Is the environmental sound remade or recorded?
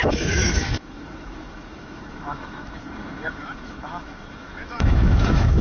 remade